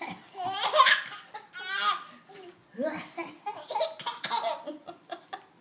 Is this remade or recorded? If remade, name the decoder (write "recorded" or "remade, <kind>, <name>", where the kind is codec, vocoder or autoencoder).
recorded